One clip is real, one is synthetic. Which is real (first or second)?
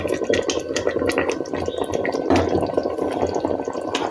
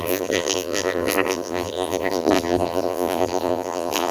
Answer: first